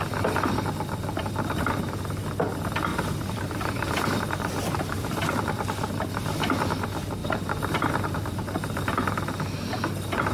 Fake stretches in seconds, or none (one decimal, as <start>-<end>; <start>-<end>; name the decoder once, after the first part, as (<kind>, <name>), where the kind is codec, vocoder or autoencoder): 2.9-5.7 (vocoder, BigVGAN v2); 7.2-8.4